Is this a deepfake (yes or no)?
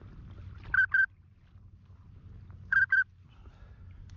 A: no